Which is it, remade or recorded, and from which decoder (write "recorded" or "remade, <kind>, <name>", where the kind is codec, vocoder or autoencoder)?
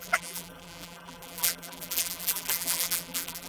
remade, vocoder, BigVGAN v2